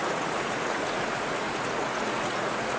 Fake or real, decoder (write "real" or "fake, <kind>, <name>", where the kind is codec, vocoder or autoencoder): fake, vocoder, Vocos